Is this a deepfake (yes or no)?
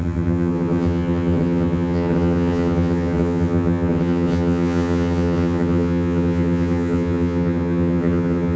yes